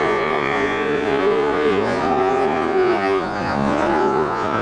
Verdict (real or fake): fake